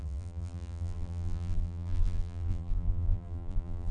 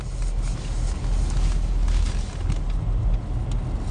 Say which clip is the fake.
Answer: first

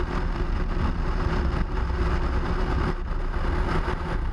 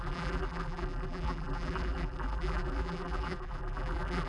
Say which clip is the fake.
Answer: second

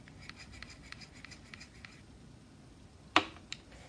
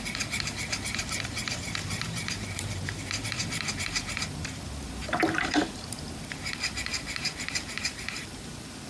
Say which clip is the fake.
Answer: second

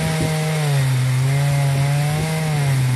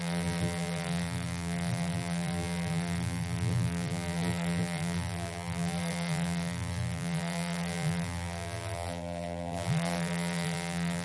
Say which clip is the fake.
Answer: second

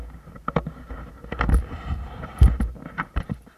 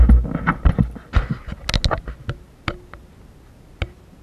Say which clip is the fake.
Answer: first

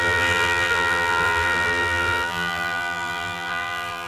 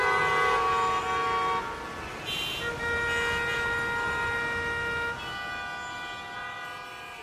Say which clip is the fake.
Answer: first